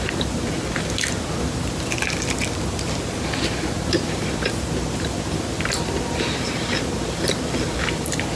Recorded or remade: remade